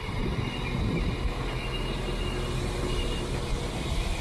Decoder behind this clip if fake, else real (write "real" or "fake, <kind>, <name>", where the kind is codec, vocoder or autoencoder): real